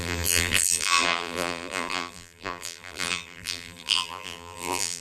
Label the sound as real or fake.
fake